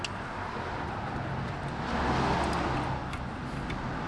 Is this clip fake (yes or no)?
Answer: no